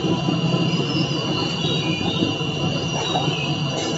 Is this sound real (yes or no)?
no